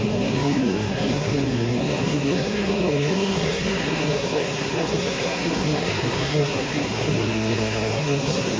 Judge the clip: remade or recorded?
remade